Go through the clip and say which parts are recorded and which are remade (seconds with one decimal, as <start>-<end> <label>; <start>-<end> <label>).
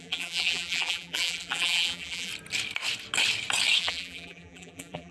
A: 0.0-2.3 remade; 2.3-3.8 recorded; 3.8-5.1 remade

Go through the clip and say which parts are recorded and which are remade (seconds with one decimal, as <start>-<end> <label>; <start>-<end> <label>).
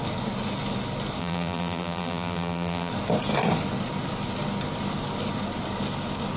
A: 0.0-1.2 recorded; 1.2-2.9 remade; 2.9-6.4 recorded